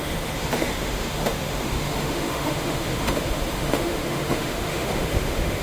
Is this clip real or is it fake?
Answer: fake